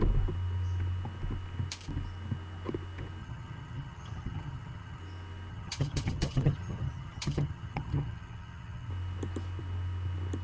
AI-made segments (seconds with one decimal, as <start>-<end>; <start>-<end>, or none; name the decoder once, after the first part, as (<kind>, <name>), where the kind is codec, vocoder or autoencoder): 3.2-5.0 (vocoder, HiFi-GAN); 5.5-8.9